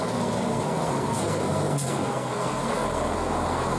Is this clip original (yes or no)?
no